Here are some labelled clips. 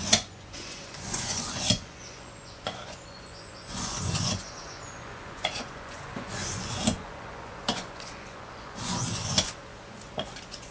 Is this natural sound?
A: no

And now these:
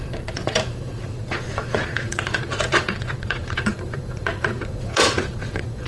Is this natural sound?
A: no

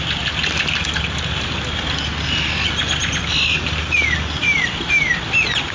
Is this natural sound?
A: yes